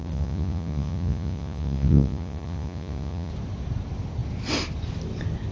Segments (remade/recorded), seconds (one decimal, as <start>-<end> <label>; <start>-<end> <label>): 0.0-3.3 remade; 3.3-5.5 recorded